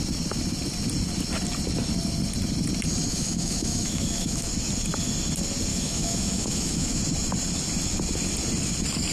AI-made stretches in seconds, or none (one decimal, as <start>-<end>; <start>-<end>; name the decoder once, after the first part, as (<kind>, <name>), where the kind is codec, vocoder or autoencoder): 3.1-4.5 (autoencoder, DAC-VAE); 5.7-7.0